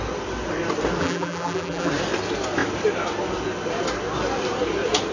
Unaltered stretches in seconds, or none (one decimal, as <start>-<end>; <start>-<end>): 0.0-1.0; 1.9-5.1